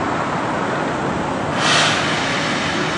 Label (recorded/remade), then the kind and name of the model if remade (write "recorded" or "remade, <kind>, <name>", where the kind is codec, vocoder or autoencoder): recorded